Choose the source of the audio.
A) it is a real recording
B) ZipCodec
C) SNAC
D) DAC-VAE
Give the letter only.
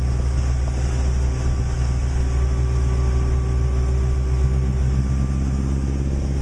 A